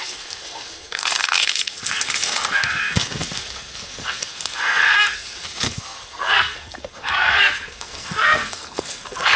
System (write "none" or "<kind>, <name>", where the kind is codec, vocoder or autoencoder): codec, SNAC